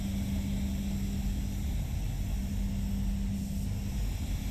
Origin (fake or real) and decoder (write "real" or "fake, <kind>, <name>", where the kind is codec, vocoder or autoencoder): real